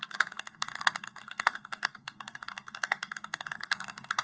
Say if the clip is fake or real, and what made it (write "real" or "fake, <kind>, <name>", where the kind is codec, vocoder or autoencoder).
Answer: fake, codec, SNAC